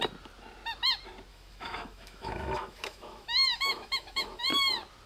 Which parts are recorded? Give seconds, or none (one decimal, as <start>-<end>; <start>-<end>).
0.0-1.3; 4.4-5.1